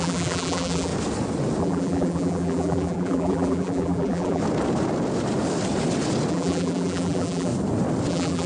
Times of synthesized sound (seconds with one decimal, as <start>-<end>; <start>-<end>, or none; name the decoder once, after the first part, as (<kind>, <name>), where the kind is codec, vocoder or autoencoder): 0.0-0.9 (vocoder, BigVGAN v2); 1.6-4.4; 6.3-7.5; 8.1-8.5